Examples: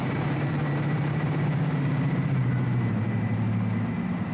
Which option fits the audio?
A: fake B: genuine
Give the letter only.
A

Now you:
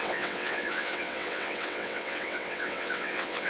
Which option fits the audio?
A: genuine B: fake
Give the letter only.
B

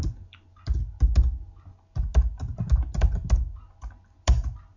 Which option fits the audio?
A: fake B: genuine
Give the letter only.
B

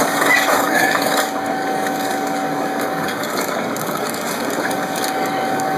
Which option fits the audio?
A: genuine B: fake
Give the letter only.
B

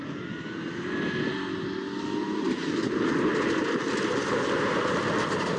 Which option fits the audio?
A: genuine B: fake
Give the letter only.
A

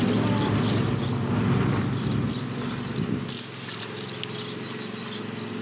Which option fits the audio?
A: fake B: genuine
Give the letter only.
B